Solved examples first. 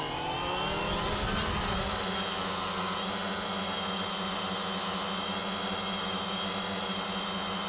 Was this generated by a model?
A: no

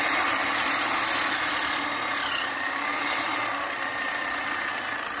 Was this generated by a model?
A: no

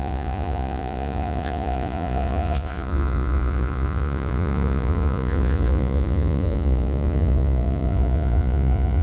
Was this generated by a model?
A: yes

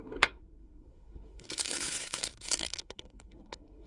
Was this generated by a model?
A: yes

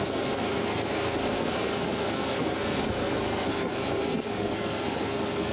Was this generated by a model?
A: yes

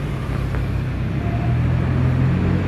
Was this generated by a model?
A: no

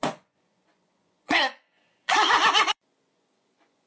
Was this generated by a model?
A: yes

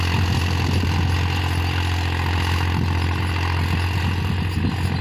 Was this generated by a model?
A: no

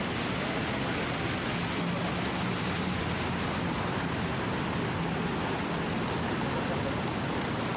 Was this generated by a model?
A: no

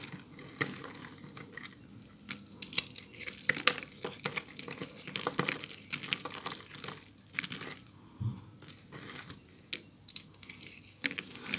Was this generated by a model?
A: no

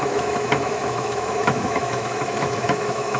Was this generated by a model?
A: yes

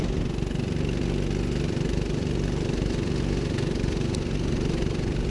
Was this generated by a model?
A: no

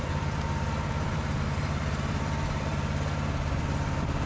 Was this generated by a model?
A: yes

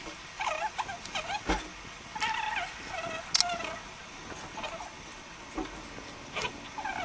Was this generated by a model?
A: no